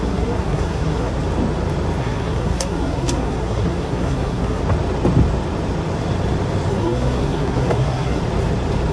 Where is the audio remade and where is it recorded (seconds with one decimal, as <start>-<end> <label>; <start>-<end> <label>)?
0.0-1.1 remade; 1.1-2.0 recorded; 2.0-4.6 remade; 4.6-6.7 recorded; 6.7-8.2 remade; 8.2-8.9 recorded